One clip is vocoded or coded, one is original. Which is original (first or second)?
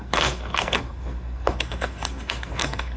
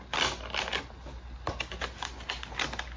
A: second